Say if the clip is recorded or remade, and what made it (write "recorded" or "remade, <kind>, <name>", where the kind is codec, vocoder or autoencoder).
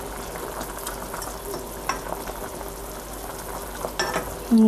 recorded